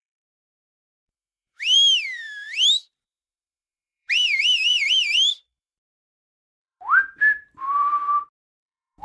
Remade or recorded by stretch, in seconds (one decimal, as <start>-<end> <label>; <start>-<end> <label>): 0.0-9.0 remade